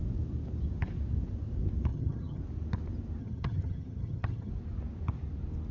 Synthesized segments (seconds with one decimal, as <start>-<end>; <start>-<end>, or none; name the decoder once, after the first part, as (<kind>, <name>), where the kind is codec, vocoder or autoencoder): 1.9-2.4 (vocoder, HiFi-GAN); 3.2-4.5